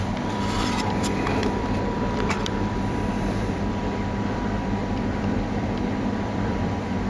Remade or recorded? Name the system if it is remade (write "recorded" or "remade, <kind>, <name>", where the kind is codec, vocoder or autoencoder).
remade, vocoder, BigVGAN v2